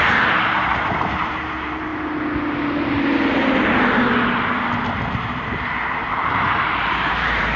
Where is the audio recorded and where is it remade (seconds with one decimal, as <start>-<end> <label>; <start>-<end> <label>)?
0.0-1.9 remade; 1.9-6.1 recorded; 6.1-7.6 remade